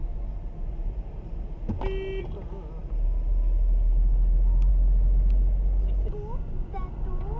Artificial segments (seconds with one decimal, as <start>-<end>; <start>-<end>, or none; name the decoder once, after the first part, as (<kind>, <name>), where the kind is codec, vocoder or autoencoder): none